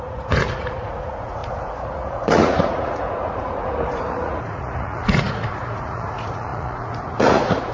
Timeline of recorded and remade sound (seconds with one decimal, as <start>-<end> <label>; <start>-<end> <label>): 0.0-7.7 remade